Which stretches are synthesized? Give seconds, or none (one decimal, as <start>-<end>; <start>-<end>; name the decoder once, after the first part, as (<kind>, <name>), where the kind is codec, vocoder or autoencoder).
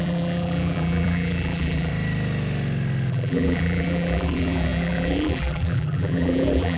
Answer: 0.0-1.9 (vocoder, BigVGAN v2); 3.1-6.8